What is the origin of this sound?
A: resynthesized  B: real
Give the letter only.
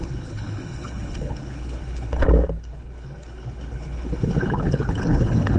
A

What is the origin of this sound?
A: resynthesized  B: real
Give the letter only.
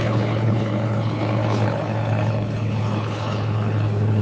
A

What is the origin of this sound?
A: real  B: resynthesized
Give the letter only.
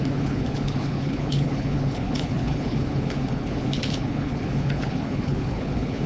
B